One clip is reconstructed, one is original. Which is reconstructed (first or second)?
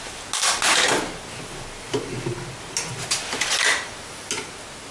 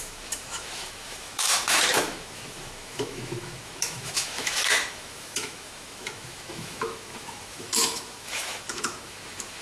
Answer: second